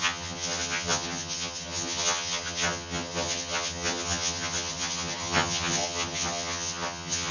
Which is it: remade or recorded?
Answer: remade